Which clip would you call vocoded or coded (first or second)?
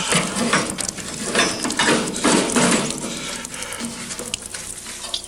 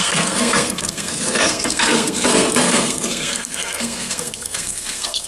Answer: second